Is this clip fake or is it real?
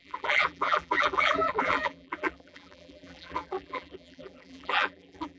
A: fake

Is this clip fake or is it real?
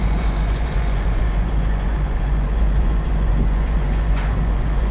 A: fake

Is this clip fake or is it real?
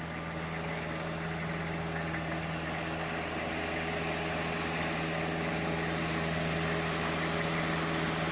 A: real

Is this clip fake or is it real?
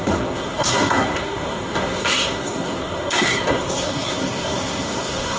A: fake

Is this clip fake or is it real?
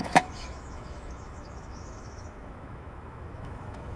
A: fake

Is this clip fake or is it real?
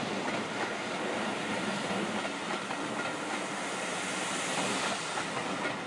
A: real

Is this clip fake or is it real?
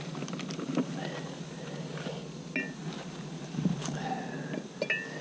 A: real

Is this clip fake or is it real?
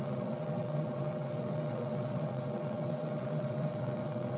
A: fake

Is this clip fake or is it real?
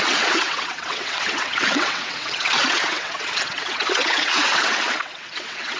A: fake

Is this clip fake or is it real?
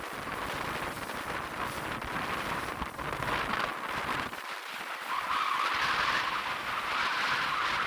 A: real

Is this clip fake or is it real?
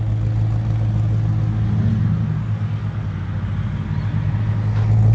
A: real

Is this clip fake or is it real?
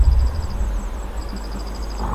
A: real